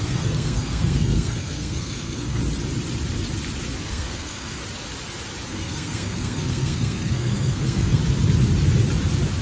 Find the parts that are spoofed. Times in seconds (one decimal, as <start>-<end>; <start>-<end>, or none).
0.0-2.4; 3.8-4.6; 5.5-8.0